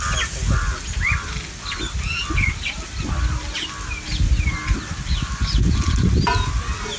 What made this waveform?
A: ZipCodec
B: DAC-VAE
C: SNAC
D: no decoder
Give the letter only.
D